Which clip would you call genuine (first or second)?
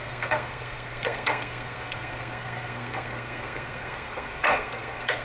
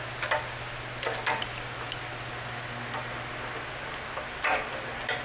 second